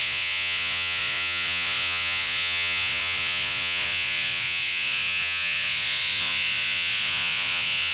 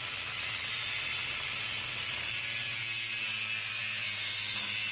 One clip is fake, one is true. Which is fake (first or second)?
first